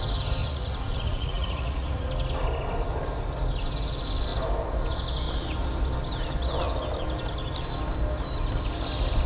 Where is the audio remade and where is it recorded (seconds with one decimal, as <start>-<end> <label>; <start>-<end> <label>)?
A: 0.0-0.4 recorded; 0.4-2.1 remade; 2.1-9.3 recorded